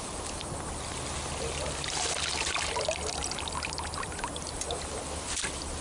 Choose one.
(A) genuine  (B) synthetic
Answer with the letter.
A